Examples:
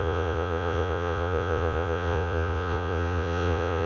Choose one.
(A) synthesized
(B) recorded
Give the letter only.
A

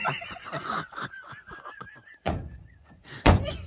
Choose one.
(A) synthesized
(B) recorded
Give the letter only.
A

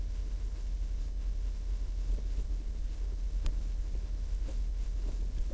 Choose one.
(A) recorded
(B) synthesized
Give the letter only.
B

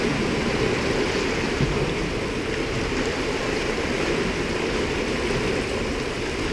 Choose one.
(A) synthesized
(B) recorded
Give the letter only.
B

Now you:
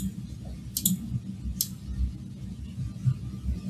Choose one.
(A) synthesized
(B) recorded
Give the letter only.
B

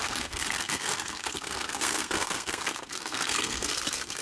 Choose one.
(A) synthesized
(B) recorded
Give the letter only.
A